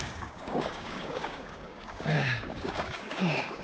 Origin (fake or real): fake